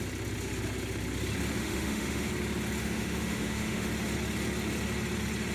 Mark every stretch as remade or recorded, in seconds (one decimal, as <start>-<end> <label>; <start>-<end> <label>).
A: 0.0-1.6 recorded; 1.6-2.3 remade; 2.3-2.8 recorded; 2.8-3.9 remade; 3.9-5.5 recorded